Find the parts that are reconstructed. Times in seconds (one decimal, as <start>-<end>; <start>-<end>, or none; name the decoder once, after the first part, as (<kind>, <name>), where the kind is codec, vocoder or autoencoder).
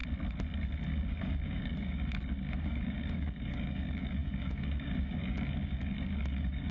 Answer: 0.9-6.7 (codec, DAC)